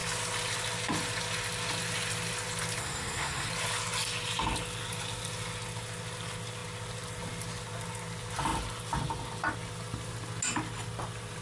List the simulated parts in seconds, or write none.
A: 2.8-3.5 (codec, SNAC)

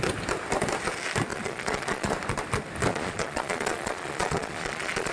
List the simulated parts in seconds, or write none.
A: 1.3-2.1 (vocoder, Vocos); 2.9-5.1

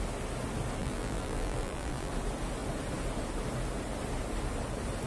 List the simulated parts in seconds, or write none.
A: 0.8-2.1 (vocoder, BigVGAN v2)

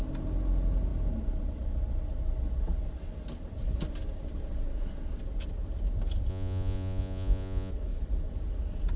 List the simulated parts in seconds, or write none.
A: 6.3-7.7 (vocoder, Vocos)

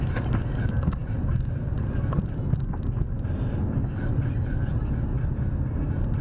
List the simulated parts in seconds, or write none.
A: none

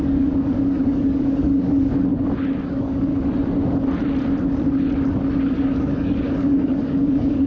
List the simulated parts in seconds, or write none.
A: 0.0-2.1 (codec, DAC); 2.7-3.1; 5.3-7.5

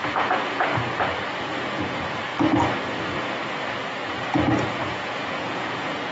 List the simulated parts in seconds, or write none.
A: 0.0-0.7 (vocoder, Vocos); 1.4-2.3; 4.7-6.1